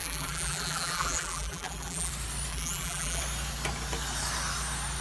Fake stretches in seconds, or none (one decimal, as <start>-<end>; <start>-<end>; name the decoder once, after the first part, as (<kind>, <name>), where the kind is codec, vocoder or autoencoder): 0.0-2.1 (vocoder, BigVGAN v2); 2.5-3.2